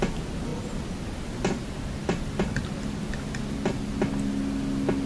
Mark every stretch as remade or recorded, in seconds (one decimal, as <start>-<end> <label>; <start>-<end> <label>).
0.0-0.5 recorded; 0.5-1.0 remade; 1.0-2.0 recorded; 2.0-3.1 remade; 3.1-5.1 recorded